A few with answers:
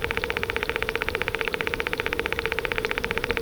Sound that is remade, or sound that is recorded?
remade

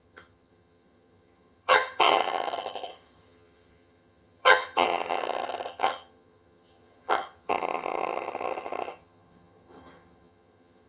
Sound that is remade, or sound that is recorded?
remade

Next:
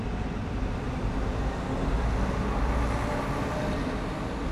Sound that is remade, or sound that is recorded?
recorded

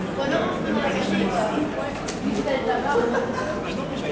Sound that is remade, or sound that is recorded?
recorded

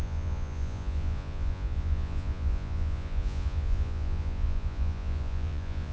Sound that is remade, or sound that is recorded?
remade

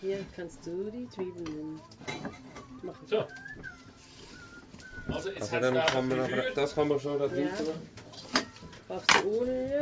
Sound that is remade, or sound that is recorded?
recorded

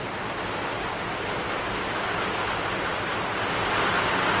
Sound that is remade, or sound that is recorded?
recorded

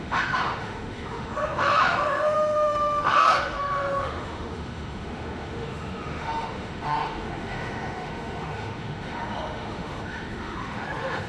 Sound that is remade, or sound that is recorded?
remade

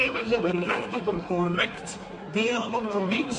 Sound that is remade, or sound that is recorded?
remade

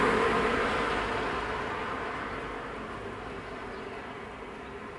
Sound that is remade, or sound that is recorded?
recorded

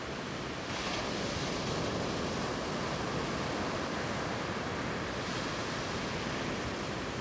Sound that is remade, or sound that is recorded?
recorded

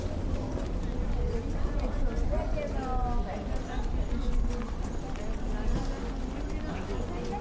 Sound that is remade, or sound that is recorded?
recorded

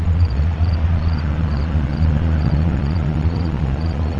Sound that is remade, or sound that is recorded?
remade